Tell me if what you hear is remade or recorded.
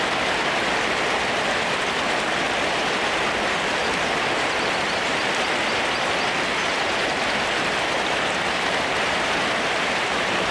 recorded